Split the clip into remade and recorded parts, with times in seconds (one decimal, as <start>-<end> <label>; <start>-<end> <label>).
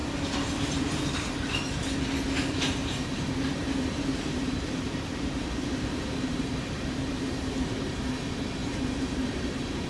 0.0-2.8 recorded; 2.8-7.8 remade; 7.8-8.6 recorded; 8.6-9.9 remade